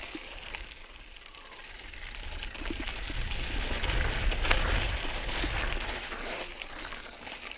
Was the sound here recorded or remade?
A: recorded